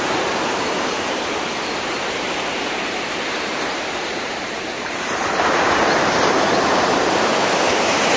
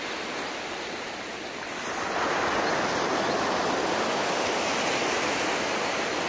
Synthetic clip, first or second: first